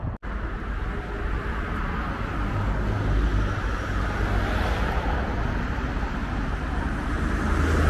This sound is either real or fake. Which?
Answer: real